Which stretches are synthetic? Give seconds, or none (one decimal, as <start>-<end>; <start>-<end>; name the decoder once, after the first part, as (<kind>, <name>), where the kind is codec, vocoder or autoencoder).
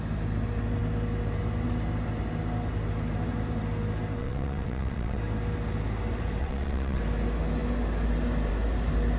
4.2-5.2 (vocoder, WaveNeXt); 6.4-7.0